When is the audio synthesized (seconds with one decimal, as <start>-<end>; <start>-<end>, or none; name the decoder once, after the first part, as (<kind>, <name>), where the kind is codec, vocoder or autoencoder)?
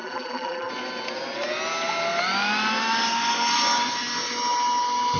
0.0-0.7 (vocoder, BigVGAN v2)